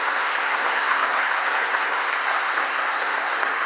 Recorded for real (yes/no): no